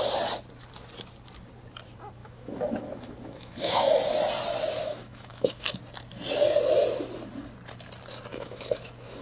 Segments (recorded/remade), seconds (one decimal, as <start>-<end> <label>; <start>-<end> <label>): 0.0-2.2 recorded; 2.2-3.9 remade; 3.9-4.8 recorded; 4.8-5.7 remade; 5.7-8.3 recorded; 8.3-9.2 remade